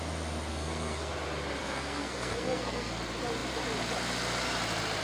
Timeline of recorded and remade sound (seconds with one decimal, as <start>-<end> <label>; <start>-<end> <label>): 0.0-0.5 recorded; 0.5-1.1 remade; 1.1-1.6 recorded; 1.6-3.0 remade; 3.0-5.0 recorded